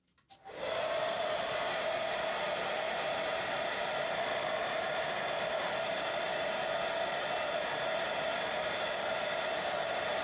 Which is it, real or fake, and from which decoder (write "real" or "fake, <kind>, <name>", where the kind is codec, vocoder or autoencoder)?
fake, vocoder, BigVGAN v2